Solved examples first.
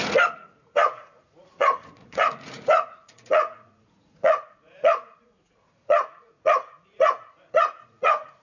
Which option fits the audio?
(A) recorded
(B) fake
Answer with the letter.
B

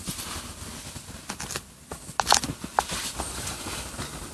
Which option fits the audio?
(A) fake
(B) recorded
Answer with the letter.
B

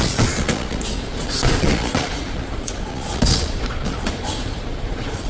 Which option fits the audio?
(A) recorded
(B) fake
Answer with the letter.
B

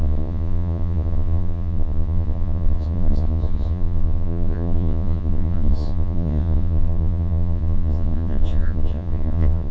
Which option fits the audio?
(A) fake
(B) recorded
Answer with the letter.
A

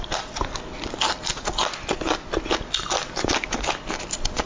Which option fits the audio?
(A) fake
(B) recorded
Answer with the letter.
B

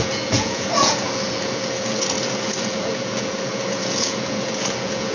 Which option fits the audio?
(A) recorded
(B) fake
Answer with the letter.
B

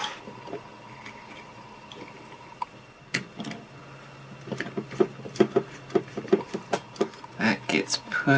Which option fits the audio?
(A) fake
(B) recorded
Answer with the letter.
B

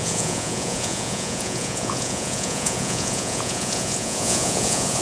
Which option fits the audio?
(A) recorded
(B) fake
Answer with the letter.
B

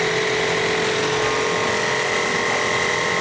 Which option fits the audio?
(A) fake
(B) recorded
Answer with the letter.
B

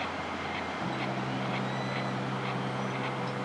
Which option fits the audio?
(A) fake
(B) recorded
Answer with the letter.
B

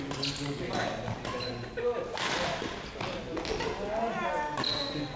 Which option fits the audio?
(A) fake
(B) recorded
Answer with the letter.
B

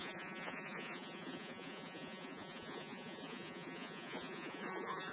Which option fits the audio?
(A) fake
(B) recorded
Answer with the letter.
A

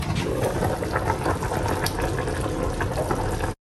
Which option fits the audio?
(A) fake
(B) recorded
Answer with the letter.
B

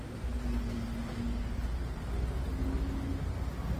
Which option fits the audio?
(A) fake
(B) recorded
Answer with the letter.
B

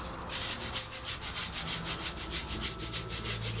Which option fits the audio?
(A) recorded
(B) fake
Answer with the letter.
A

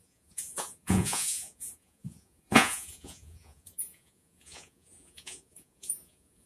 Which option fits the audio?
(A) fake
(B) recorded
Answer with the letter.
A